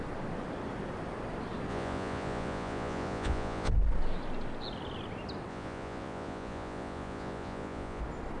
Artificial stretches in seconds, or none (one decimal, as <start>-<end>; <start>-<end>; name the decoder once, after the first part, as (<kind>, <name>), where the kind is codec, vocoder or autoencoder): 1.7-3.7 (vocoder, Vocos); 5.5-8.0